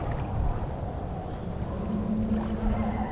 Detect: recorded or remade recorded